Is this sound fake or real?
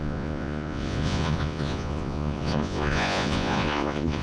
fake